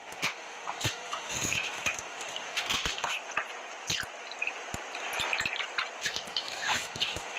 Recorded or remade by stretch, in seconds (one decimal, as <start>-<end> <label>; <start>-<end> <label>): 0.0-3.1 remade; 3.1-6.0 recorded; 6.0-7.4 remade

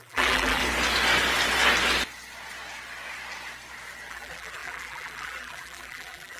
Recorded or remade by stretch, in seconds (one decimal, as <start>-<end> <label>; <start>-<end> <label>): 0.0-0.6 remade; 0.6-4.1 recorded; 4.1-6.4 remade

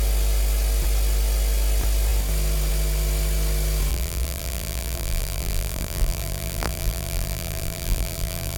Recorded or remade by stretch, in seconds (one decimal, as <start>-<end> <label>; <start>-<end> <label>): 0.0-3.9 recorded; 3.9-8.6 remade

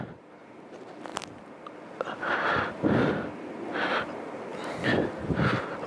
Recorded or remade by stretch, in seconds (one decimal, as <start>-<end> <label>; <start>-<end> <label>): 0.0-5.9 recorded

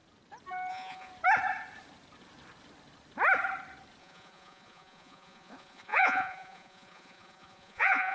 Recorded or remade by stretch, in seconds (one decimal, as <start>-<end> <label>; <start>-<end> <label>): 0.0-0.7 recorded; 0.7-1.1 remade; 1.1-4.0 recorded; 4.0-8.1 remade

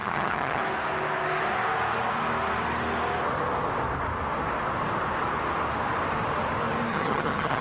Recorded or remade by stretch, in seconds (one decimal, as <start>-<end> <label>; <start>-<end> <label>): 0.0-0.6 remade; 0.6-6.9 recorded; 6.9-7.6 remade